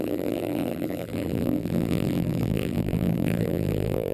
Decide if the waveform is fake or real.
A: fake